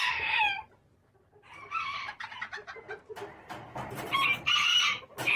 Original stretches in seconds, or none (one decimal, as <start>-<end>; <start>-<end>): 0.8-4.0